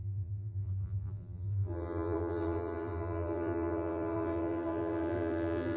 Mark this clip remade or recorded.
remade